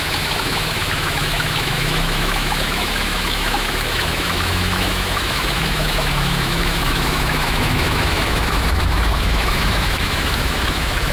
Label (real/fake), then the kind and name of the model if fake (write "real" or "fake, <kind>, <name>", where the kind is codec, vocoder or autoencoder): fake, autoencoder, DAC-VAE